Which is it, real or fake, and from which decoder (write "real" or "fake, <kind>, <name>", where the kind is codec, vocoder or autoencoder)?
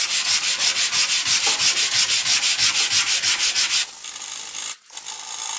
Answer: real